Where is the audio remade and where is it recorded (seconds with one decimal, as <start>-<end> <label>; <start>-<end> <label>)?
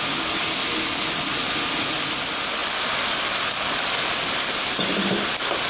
0.0-5.7 recorded